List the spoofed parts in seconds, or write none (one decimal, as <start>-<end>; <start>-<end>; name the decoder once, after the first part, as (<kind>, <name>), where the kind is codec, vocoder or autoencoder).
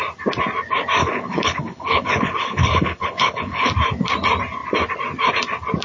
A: 1.0-3.7 (codec, HILCodec)